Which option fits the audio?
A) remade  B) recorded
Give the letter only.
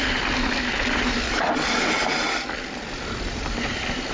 B